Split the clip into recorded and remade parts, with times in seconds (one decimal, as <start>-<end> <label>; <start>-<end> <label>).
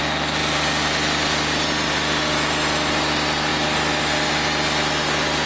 0.0-5.5 recorded